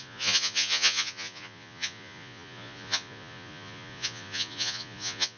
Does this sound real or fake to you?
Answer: fake